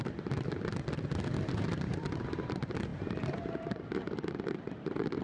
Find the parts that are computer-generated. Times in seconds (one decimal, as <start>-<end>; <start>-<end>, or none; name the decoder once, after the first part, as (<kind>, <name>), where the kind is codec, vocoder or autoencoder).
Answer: 0.0-0.7 (vocoder, BigVGAN v2); 1.5-5.2